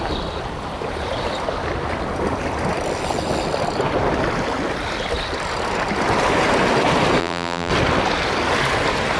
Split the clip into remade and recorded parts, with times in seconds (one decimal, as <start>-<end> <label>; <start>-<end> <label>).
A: 0.0-7.2 recorded; 7.2-7.7 remade; 7.7-9.2 recorded

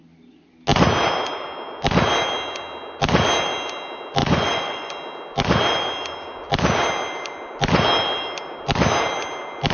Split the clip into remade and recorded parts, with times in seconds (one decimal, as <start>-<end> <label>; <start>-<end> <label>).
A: 0.0-4.2 recorded; 4.2-4.9 remade; 4.9-9.7 recorded

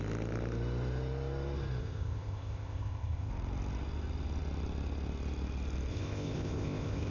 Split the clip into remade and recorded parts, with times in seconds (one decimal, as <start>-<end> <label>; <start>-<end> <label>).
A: 0.0-1.8 recorded; 1.8-3.3 remade; 3.3-5.9 recorded; 5.9-7.1 remade

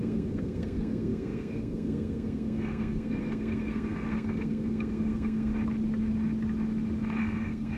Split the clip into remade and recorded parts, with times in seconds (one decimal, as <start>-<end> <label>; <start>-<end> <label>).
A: 0.0-5.5 remade; 5.5-7.2 recorded; 7.2-7.8 remade

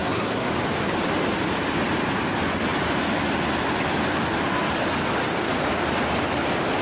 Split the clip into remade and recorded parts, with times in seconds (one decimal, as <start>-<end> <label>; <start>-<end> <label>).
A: 0.0-0.5 remade; 0.5-6.8 recorded

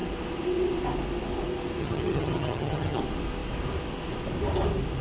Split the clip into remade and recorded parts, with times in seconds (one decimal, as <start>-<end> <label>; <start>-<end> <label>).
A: 0.0-1.8 recorded; 1.8-3.0 remade; 3.0-5.0 recorded

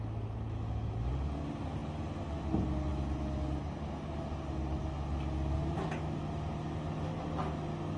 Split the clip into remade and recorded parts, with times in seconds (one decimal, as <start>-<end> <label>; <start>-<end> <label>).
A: 0.0-8.0 recorded